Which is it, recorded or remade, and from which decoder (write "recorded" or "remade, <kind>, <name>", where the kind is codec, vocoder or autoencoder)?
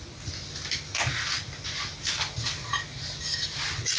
recorded